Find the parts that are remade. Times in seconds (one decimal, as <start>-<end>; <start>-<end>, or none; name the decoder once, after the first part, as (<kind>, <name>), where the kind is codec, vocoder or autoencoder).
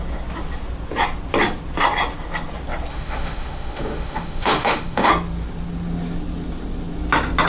2.9-5.1 (autoencoder, DAC-VAE)